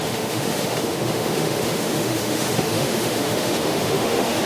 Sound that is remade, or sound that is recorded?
remade